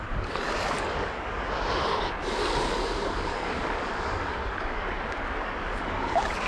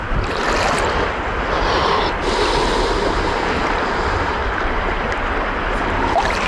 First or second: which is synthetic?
first